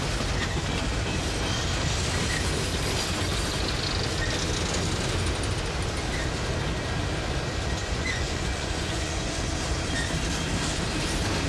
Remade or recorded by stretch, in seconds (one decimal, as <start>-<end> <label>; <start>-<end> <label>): 0.0-7.8 recorded; 7.8-9.5 remade; 9.5-11.5 recorded